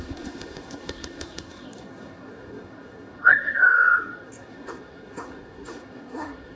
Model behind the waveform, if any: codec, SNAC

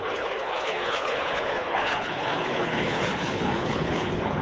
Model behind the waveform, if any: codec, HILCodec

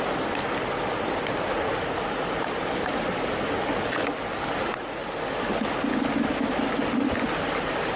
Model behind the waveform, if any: none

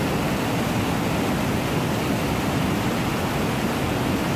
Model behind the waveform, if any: none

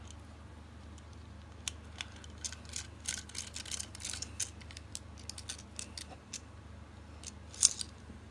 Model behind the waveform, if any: none